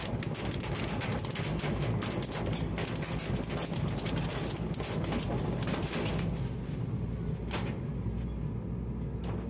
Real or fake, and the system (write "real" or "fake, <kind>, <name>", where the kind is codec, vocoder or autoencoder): real